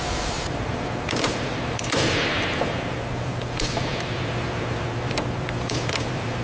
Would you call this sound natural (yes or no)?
no